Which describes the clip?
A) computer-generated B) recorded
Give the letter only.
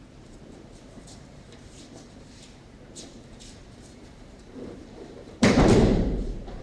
A